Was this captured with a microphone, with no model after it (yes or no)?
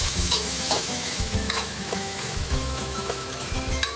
no